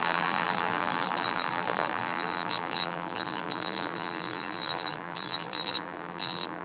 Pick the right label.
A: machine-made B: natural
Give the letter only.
A